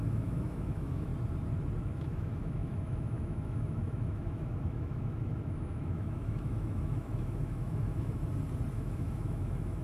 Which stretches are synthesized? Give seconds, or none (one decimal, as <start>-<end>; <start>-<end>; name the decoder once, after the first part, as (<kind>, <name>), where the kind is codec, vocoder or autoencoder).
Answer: 0.0-1.1 (autoencoder, DAC-VAE); 1.8-8.2; 8.7-9.8